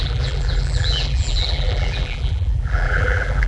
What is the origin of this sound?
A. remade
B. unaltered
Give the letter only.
A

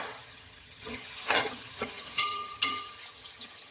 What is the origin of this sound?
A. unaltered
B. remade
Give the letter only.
B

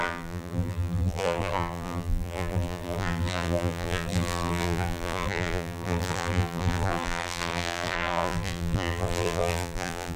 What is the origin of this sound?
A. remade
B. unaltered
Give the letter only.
A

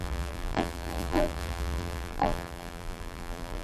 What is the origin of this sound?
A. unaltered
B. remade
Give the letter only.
B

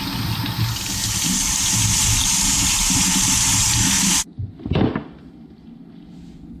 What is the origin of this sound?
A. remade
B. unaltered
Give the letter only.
B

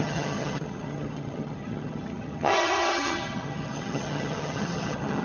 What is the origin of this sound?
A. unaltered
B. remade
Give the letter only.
B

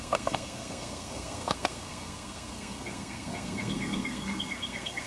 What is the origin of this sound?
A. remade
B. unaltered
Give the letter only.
A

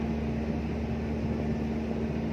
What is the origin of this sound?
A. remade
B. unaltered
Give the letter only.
B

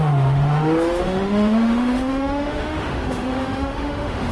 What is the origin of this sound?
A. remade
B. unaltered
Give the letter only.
A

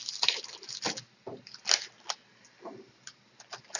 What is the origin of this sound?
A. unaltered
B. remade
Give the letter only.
A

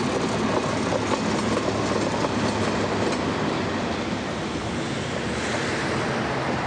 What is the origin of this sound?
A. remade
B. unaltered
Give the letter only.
B